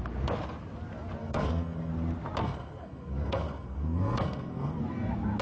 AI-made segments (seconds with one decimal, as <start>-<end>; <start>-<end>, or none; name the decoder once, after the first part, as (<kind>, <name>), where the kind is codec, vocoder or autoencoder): 1.2-1.9 (codec, SNAC); 2.4-4.8